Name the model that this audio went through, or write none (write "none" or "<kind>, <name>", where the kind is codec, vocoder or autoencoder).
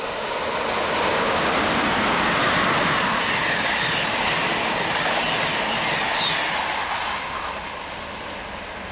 none